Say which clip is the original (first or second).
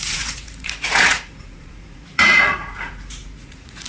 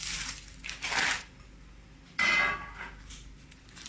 second